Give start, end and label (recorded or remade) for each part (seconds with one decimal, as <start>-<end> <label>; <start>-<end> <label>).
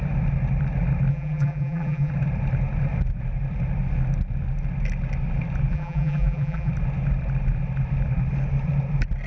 0.0-1.1 recorded; 1.1-2.1 remade; 2.1-5.7 recorded; 5.7-6.7 remade; 6.7-9.3 recorded